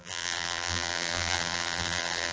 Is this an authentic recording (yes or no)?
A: no